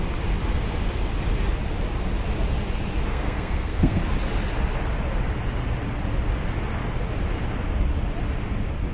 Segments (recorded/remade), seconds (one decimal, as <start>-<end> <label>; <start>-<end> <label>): 0.0-3.1 recorded; 3.1-4.0 remade; 4.0-8.9 recorded

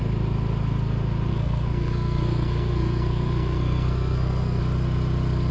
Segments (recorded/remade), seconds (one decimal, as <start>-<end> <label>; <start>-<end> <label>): 0.0-1.3 recorded; 1.3-4.6 remade; 4.6-5.5 recorded

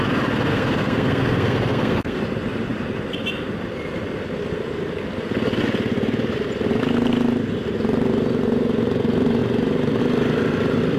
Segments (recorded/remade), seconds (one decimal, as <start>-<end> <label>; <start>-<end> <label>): 0.0-0.5 recorded; 0.5-2.2 remade; 2.2-11.0 recorded

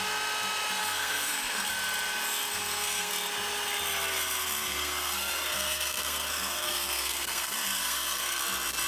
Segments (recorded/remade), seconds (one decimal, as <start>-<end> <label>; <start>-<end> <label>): 0.0-0.8 recorded; 0.8-1.7 remade; 1.7-2.5 recorded; 2.5-3.1 remade; 3.1-4.4 recorded; 4.4-8.4 remade; 8.4-8.9 recorded

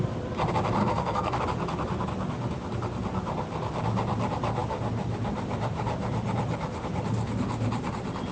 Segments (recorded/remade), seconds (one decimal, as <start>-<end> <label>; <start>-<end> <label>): 0.0-0.8 recorded; 0.8-1.4 remade; 1.4-8.3 recorded